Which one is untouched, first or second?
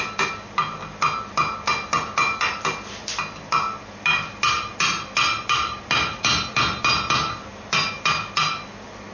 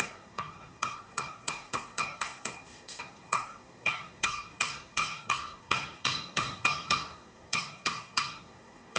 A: first